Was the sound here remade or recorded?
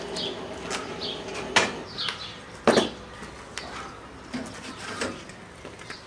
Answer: recorded